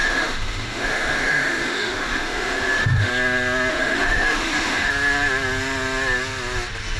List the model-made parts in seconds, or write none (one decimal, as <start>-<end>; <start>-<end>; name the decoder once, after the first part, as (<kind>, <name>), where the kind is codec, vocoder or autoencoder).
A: 0.0-3.1 (autoencoder, DAC-VAE); 3.7-4.9